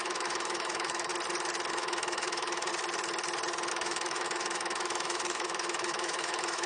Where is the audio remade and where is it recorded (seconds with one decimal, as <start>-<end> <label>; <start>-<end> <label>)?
0.0-1.1 remade; 1.1-1.7 recorded; 1.7-2.7 remade; 2.7-3.7 recorded; 3.7-6.7 remade